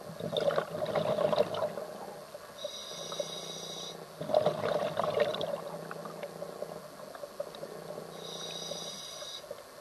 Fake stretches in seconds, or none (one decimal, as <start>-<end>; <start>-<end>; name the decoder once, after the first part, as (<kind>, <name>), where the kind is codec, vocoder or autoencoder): none